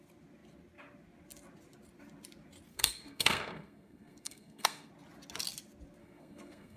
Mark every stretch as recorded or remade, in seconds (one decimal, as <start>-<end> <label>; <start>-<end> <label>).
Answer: 0.0-2.7 recorded; 2.7-4.9 remade; 4.9-6.0 recorded; 6.0-6.8 remade